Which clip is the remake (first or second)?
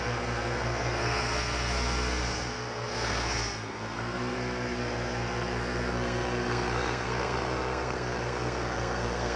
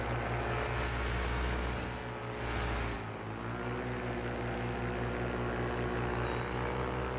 first